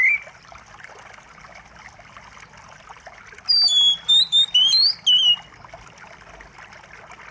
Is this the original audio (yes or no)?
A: yes